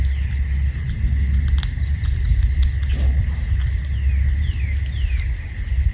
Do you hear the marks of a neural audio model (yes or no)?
no